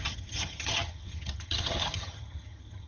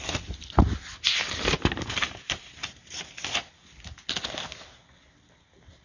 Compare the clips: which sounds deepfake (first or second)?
first